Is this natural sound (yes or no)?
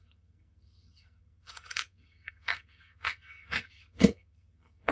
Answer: no